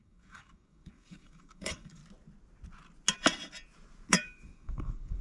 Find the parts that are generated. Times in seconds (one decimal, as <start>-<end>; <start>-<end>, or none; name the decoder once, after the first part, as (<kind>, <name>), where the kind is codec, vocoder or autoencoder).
0.0-2.0 (codec, DAC); 4.1-5.2